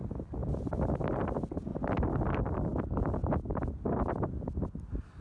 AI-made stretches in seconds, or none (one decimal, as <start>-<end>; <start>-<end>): none